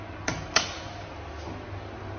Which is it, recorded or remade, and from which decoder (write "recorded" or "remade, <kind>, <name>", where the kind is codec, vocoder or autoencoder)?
recorded